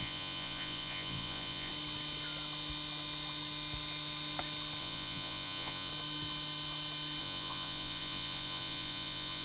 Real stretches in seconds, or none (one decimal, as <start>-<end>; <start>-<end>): 1.7-4.8; 5.9-7.2